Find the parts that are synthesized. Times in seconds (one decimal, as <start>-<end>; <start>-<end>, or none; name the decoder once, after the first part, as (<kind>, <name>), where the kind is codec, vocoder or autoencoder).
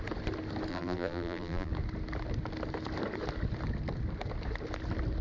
0.7-1.7 (vocoder, BigVGAN v2)